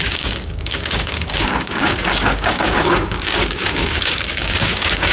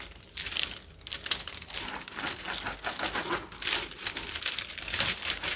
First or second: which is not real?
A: first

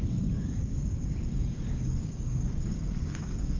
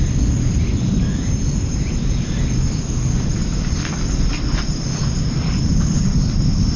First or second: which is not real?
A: first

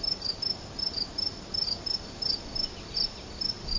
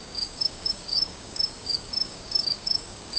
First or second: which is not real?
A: second